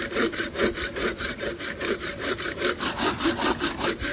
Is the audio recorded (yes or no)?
no